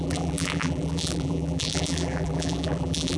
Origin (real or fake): fake